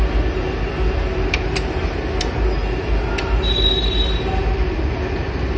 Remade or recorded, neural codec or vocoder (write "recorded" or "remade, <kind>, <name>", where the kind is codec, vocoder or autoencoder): recorded